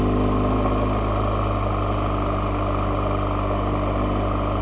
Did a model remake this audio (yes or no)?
no